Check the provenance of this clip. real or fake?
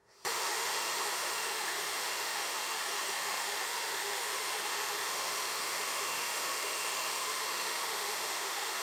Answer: fake